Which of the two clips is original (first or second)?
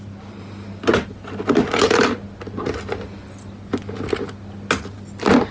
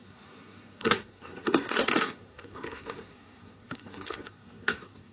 first